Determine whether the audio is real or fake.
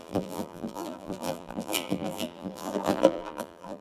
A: fake